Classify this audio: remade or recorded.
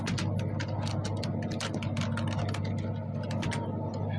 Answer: recorded